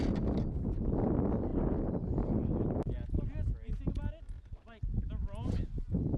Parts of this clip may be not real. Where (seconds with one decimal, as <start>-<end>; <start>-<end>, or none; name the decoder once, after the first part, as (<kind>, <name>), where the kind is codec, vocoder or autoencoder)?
none